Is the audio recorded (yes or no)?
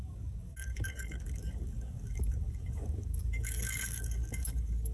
no